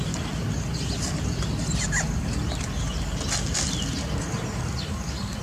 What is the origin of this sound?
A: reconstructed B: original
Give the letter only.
B